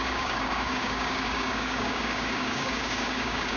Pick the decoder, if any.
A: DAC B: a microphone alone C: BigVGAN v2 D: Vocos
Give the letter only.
A